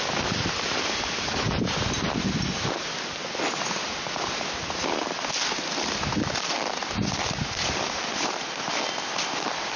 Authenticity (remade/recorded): recorded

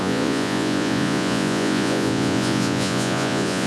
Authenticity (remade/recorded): remade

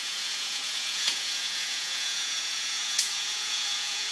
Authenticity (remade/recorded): remade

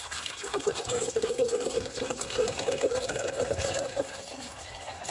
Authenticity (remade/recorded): remade